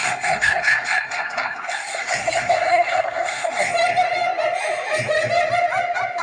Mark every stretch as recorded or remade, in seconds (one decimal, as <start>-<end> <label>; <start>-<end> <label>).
0.0-3.7 remade; 3.7-6.2 recorded